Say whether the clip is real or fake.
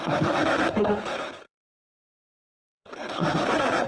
fake